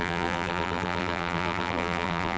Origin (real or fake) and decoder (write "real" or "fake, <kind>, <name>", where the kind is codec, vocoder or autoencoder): fake, vocoder, BigVGAN v2